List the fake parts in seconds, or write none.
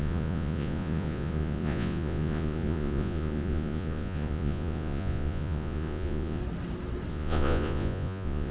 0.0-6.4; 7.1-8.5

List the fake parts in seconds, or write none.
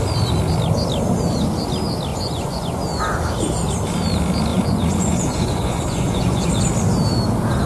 2.1-2.8; 4.5-6.5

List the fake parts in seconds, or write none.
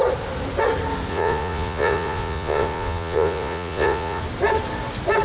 1.1-4.2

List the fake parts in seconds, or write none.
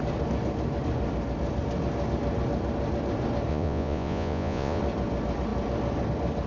3.5-4.8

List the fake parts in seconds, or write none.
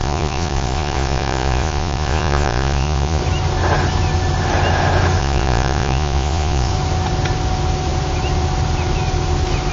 0.0-3.2; 5.2-6.7